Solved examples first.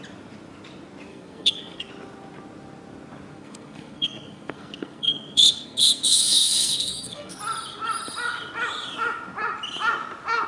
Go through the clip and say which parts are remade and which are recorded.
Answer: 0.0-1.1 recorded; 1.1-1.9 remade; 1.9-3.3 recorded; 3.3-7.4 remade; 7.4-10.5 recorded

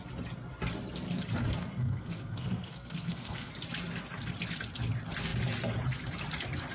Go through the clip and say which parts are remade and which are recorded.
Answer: 0.0-1.6 recorded; 1.6-3.5 remade; 3.5-6.7 recorded

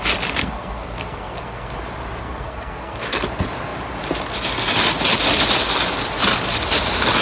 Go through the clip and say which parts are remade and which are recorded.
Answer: 0.0-0.4 recorded; 0.4-1.7 remade; 1.7-2.2 recorded; 2.2-3.2 remade; 3.2-7.2 recorded